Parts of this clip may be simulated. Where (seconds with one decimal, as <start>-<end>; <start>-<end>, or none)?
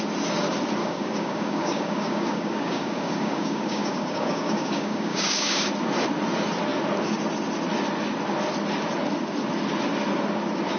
0.8-5.6